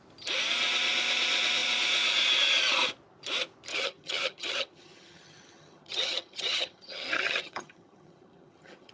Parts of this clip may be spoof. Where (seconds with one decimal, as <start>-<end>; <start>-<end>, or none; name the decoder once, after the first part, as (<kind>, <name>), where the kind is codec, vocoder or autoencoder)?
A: 3.7-8.9 (vocoder, HiFi-GAN)